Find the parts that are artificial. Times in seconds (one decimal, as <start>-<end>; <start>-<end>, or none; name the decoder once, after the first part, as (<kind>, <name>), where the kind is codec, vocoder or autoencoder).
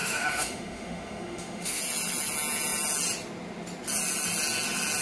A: 0.0-1.8 (autoencoder, DAC-VAE)